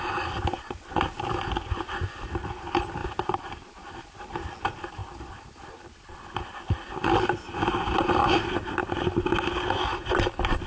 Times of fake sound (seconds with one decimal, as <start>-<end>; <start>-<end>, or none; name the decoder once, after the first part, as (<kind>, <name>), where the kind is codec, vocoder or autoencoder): none